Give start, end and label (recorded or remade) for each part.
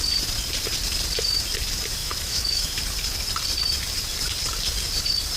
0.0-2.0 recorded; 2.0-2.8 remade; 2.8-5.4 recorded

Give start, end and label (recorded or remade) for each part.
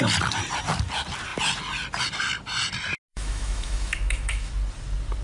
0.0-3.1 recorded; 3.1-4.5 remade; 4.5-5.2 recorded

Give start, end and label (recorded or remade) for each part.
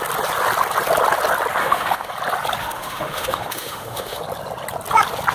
0.0-1.6 recorded; 1.6-2.1 remade; 2.1-2.6 recorded; 2.6-4.2 remade; 4.2-5.3 recorded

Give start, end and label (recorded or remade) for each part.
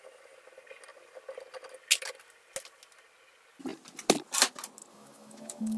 0.0-4.9 recorded; 4.9-5.8 remade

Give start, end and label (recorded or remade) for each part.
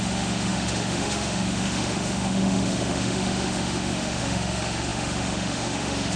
0.0-6.2 remade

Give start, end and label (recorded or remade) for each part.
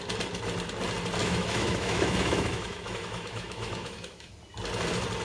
0.0-1.2 recorded; 1.2-4.3 remade; 4.3-5.2 recorded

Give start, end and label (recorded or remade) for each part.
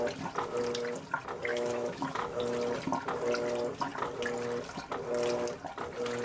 0.0-1.5 recorded; 1.5-2.4 remade; 2.4-6.2 recorded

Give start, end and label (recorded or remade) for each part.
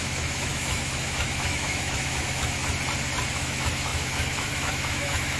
0.0-2.6 remade; 2.6-3.3 recorded; 3.3-5.4 remade